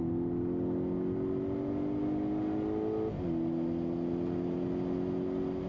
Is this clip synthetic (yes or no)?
no